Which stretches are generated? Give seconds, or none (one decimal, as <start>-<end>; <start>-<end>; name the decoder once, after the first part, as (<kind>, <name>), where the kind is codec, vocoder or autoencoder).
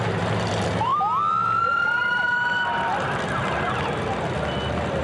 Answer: 0.0-0.9 (vocoder, BigVGAN v2); 1.6-2.0